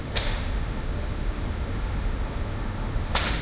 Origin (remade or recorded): remade